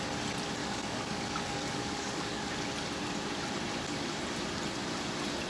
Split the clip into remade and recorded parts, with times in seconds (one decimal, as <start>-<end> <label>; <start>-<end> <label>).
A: 0.0-0.6 recorded; 0.6-2.5 remade; 2.5-5.5 recorded